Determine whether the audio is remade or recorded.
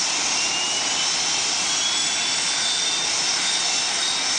recorded